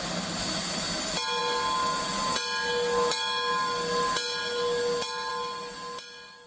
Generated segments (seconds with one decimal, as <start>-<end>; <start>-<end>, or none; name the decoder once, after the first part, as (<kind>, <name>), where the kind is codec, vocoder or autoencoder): none